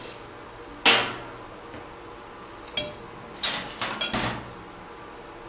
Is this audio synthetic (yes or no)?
no